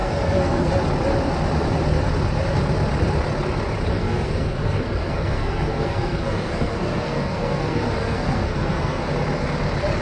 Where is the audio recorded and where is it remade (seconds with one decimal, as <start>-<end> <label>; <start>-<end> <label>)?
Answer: 0.0-0.7 remade; 0.7-3.9 recorded; 3.9-9.1 remade; 9.1-10.0 recorded